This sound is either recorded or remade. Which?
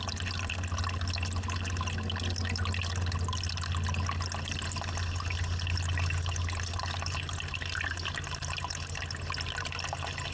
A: recorded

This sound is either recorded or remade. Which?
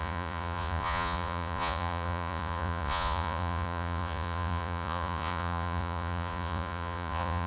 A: remade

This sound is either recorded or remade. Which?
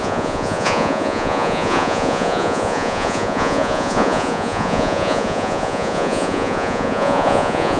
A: remade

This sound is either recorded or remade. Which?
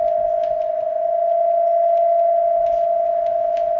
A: recorded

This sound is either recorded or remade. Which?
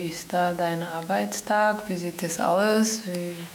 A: remade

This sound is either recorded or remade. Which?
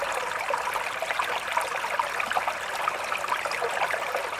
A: recorded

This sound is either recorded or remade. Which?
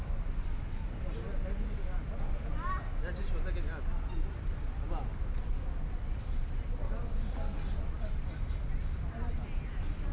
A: recorded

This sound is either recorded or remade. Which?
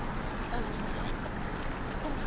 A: recorded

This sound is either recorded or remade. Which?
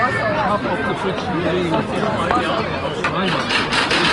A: recorded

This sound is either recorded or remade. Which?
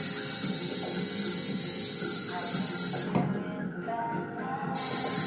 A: recorded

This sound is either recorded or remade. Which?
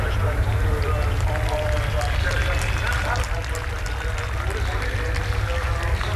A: recorded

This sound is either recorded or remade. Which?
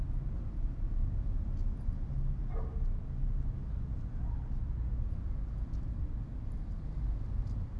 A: recorded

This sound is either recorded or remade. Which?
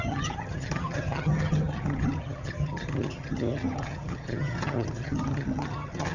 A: remade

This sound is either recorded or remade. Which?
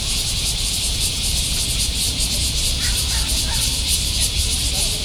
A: remade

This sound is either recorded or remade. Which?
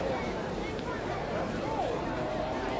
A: remade